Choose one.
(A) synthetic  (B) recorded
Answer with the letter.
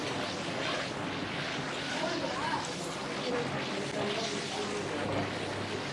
B